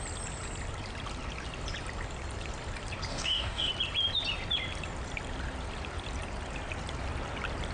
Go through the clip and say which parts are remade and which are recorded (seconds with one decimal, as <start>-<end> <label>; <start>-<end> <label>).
0.0-3.1 recorded; 3.1-3.7 remade; 3.7-7.7 recorded

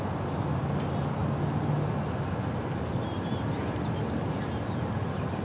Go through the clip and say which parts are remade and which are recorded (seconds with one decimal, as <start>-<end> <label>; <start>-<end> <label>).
0.0-5.4 recorded

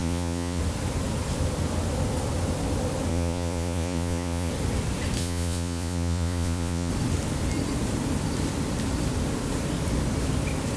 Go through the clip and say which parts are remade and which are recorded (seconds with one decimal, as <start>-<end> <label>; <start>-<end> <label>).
0.0-0.6 remade; 0.6-3.1 recorded; 3.1-4.5 remade; 4.5-5.2 recorded; 5.2-6.9 remade; 6.9-10.8 recorded